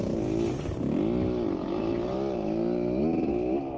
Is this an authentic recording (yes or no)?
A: yes